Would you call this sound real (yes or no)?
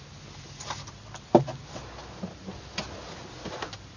yes